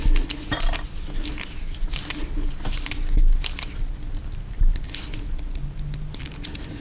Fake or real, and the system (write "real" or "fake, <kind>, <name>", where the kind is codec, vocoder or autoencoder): real